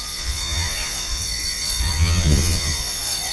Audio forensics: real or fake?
fake